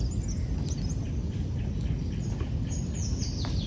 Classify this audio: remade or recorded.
recorded